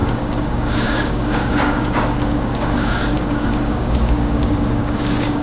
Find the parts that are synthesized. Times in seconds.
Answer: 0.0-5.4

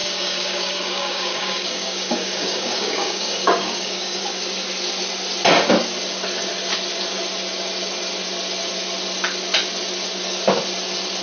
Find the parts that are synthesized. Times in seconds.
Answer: 0.0-4.2

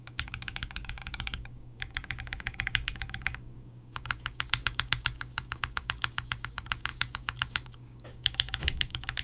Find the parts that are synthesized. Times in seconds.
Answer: 0.0-9.2

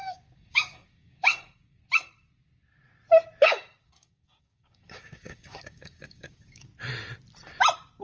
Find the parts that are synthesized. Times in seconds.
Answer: 0.0-1.8; 3.4-6.7

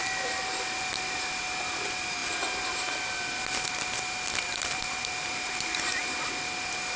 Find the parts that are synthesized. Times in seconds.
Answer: none

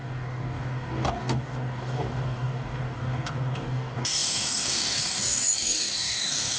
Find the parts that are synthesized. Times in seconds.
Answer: 0.0-6.6

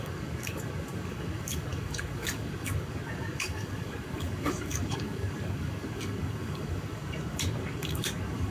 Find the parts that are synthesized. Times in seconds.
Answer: 0.0-8.5

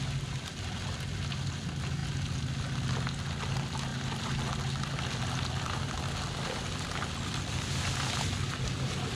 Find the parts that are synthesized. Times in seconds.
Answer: none